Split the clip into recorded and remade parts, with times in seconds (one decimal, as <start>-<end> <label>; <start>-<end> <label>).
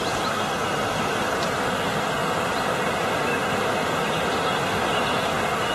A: 0.0-5.7 recorded